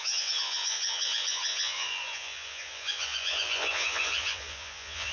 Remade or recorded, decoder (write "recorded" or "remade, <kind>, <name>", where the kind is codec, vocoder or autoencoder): remade, vocoder, Vocos